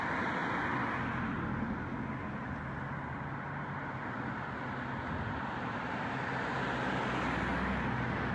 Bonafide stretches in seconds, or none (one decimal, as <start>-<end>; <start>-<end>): 0.0-8.3